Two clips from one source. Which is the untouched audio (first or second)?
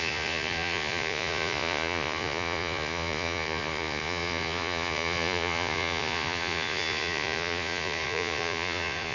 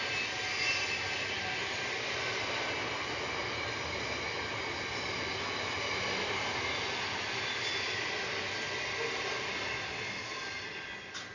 second